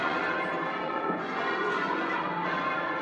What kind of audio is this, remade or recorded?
remade